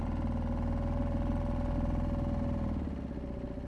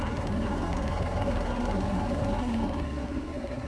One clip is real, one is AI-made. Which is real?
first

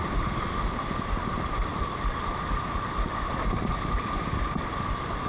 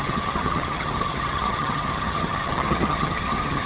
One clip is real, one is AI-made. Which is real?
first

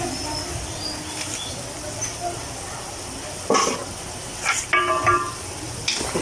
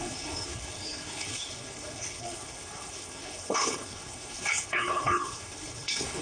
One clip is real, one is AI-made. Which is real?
first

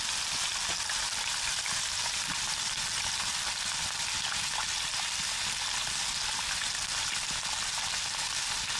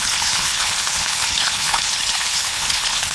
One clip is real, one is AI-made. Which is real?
first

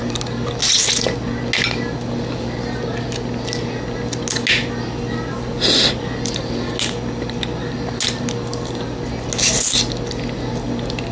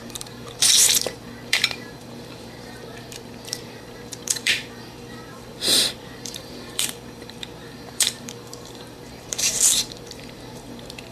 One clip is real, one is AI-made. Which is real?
first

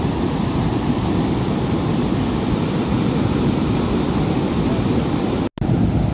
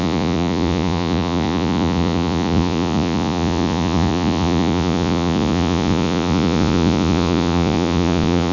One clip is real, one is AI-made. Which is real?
first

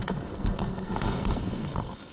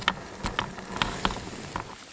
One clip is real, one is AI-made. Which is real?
second